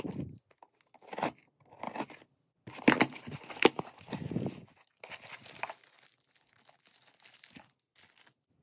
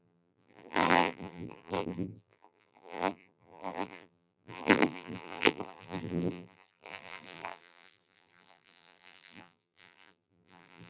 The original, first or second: first